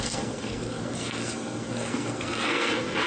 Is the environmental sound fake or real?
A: fake